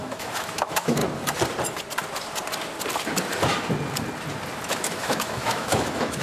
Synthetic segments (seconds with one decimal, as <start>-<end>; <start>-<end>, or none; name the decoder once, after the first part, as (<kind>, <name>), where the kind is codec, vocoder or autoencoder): 0.0-1.0 (autoencoder, DAC-VAE); 4.7-6.2